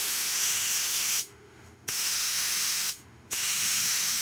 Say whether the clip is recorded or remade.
remade